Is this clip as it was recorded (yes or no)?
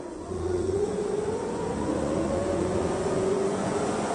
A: no